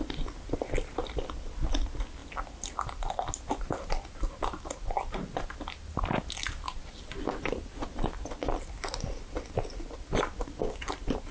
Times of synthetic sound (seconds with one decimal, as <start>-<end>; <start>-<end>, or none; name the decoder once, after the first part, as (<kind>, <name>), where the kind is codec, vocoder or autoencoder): none